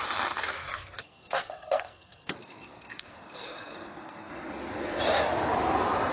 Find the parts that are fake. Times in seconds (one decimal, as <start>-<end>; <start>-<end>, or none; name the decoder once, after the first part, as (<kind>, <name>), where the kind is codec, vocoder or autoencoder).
0.6-4.3 (codec, SNAC)